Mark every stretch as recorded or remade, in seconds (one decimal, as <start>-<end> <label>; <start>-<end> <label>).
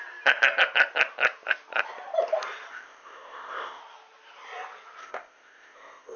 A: 0.0-2.7 recorded; 2.7-3.8 remade; 3.8-5.0 recorded; 5.0-6.2 remade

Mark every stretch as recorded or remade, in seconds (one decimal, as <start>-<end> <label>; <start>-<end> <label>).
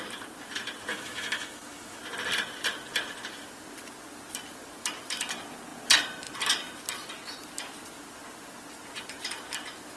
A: 0.0-0.9 recorded; 0.9-2.0 remade; 2.0-10.0 recorded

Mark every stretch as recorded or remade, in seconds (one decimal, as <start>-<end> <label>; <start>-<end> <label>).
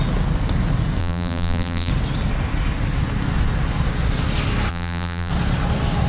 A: 0.0-1.0 recorded; 1.0-1.9 remade; 1.9-4.7 recorded; 4.7-5.3 remade; 5.3-6.1 recorded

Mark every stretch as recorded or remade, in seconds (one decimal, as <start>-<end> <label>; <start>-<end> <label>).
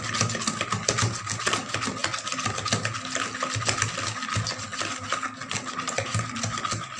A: 0.0-7.0 recorded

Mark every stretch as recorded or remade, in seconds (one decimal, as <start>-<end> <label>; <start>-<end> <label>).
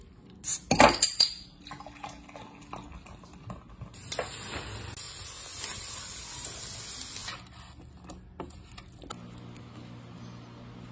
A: 0.0-5.5 recorded; 5.5-6.6 remade; 6.6-10.9 recorded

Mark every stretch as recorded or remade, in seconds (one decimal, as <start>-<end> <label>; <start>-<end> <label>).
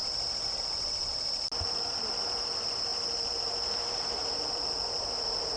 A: 0.0-5.6 recorded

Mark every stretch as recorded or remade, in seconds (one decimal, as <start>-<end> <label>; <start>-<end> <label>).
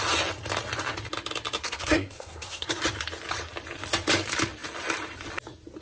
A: 0.0-1.6 recorded; 1.6-2.8 remade; 2.8-5.8 recorded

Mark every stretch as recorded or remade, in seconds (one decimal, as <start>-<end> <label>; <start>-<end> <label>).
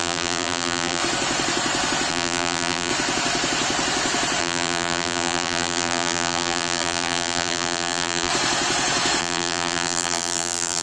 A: 0.0-1.0 remade; 1.0-2.1 recorded; 2.1-2.9 remade; 2.9-4.4 recorded; 4.4-8.3 remade; 8.3-9.2 recorded; 9.2-10.8 remade